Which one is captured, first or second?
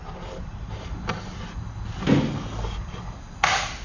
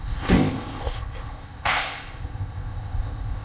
first